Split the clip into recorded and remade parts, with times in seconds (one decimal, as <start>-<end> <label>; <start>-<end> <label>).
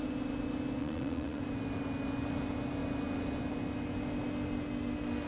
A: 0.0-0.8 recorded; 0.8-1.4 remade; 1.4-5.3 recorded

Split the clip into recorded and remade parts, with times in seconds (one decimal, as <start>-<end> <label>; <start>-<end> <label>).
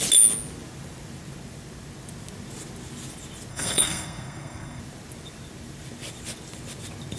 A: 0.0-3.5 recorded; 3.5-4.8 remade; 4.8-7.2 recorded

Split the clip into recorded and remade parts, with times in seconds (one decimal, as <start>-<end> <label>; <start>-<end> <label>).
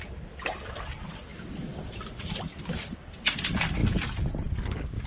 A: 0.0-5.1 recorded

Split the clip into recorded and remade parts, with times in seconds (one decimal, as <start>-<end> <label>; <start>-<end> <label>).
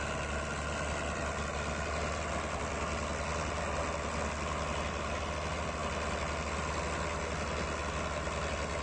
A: 0.0-8.8 recorded